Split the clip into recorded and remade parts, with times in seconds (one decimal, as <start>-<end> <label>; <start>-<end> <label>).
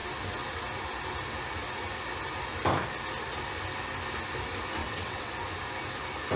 0.0-4.8 recorded; 4.8-5.3 remade; 5.3-6.4 recorded